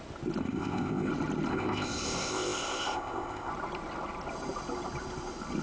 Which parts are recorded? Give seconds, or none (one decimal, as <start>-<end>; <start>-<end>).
0.0-0.4; 1.1-1.5; 3.5-5.6